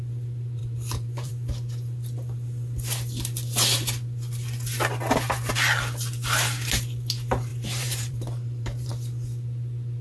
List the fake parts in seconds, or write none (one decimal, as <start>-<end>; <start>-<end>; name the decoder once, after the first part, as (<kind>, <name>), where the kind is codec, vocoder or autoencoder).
0.6-1.3 (vocoder, BigVGAN v2); 7.5-8.9